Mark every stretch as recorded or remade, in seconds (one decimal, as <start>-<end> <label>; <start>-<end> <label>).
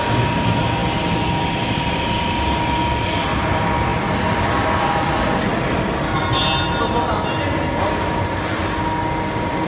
0.0-3.9 recorded; 3.9-6.2 remade; 6.2-9.7 recorded